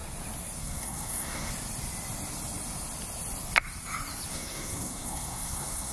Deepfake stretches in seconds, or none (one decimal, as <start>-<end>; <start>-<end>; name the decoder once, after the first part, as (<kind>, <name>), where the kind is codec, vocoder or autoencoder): 0.6-1.5 (codec, SNAC); 4.3-5.9